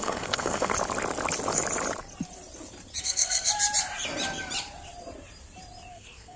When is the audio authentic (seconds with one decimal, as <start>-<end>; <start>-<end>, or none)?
0.7-3.0; 3.5-5.9